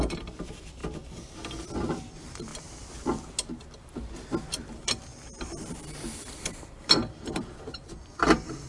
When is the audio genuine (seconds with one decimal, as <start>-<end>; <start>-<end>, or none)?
0.8-1.6; 2.5-4.4